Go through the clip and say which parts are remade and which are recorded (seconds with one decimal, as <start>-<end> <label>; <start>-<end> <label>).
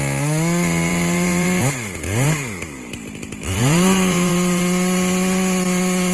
0.0-0.9 recorded; 0.9-4.6 remade; 4.6-6.1 recorded